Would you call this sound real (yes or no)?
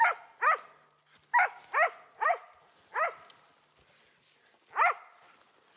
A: yes